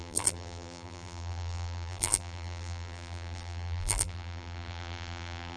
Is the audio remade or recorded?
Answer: remade